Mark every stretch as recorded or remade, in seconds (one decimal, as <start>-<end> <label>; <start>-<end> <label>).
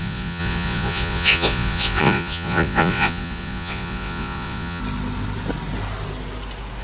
0.0-4.8 remade; 4.8-6.8 recorded